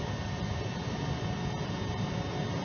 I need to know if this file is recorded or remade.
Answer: recorded